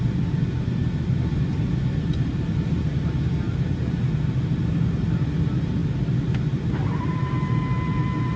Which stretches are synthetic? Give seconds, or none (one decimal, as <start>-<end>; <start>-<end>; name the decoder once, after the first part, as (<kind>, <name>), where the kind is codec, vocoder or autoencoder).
none